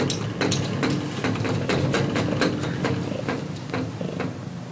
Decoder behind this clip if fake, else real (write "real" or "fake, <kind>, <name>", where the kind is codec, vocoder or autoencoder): real